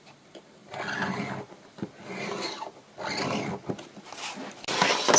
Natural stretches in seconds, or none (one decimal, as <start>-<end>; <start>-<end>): 0.0-5.2